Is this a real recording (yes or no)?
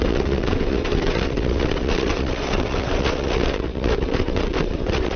no